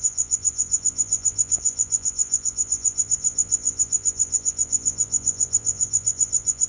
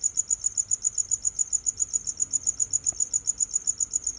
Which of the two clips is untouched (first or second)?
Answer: second